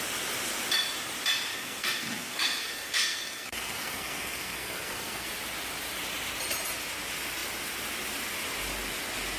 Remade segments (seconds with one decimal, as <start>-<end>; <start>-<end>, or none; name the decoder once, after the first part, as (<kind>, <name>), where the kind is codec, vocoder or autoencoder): 1.5-5.3 (codec, SNAC)